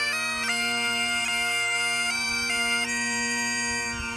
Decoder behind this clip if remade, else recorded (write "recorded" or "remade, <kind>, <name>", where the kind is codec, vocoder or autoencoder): remade, vocoder, BigVGAN v2